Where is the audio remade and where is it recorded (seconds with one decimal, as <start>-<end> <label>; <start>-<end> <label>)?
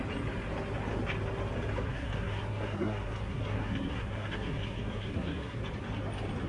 0.0-1.9 recorded; 1.9-5.6 remade; 5.6-6.5 recorded